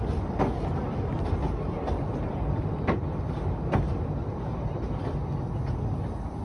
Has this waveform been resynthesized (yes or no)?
no